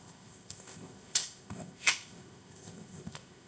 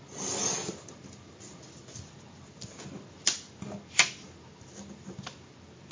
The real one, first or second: second